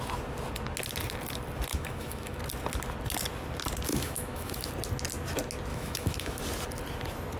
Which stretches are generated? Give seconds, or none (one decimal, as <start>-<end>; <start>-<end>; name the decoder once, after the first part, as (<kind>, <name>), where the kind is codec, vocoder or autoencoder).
1.7-2.4 (autoencoder, DAC-VAE); 3.9-4.7; 5.7-6.4

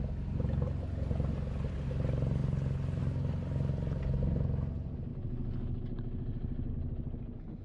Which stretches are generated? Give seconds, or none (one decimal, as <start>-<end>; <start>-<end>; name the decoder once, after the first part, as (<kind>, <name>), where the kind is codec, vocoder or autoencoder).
none

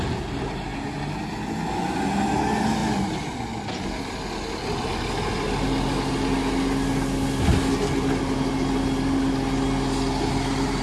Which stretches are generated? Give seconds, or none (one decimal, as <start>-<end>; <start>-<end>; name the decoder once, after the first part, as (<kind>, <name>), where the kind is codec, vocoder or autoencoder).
none

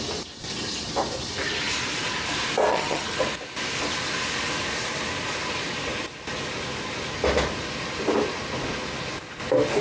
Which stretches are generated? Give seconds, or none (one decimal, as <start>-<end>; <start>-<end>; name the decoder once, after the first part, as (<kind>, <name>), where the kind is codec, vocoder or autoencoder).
2.7-3.2 (vocoder, HiFi-GAN)